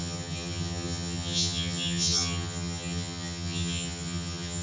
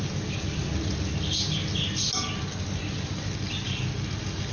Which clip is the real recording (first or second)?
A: second